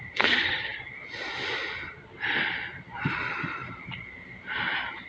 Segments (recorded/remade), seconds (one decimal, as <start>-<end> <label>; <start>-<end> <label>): 0.0-5.1 recorded